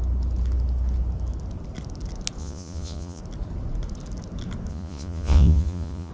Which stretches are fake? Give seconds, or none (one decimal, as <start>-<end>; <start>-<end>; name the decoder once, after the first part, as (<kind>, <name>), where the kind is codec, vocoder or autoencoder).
2.4-3.2 (vocoder, Vocos); 4.7-6.1